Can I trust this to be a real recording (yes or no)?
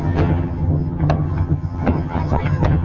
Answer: no